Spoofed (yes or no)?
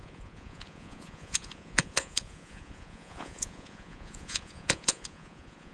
yes